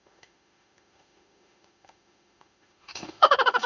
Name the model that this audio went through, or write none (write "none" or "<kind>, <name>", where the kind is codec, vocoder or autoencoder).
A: autoencoder, DAC-VAE